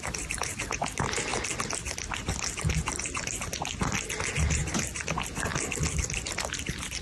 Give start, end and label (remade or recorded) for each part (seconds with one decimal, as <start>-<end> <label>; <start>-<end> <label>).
0.0-7.0 recorded